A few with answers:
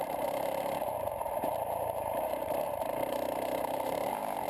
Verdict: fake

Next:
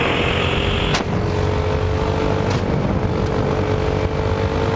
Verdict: real